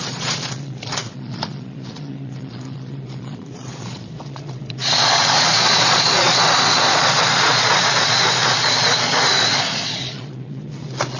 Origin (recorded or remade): remade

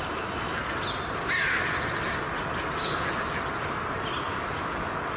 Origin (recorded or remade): recorded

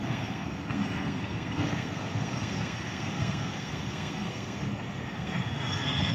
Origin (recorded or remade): remade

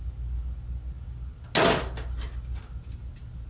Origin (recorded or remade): recorded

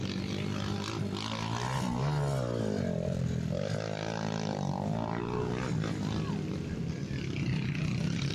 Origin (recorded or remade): recorded